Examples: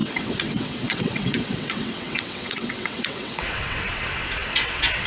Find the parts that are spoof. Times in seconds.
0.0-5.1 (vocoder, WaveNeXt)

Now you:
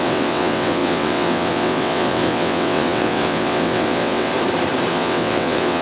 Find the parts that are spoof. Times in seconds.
0.0-4.3 (vocoder, WaveNeXt); 4.9-5.8